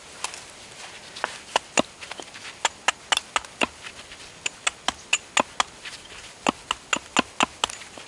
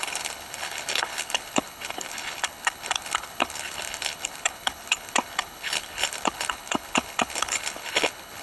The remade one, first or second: second